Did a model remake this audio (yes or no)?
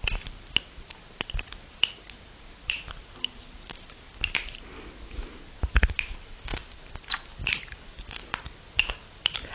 no